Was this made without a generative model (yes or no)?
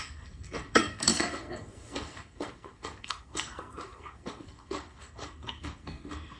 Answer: no